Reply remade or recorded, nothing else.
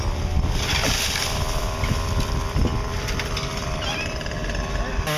recorded